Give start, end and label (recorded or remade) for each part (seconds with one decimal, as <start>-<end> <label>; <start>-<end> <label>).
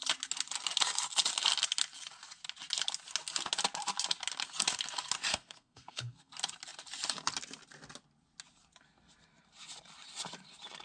0.0-5.3 recorded; 5.3-6.3 remade; 6.3-10.8 recorded